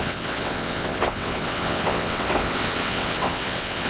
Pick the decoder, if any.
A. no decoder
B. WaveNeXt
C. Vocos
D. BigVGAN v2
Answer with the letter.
B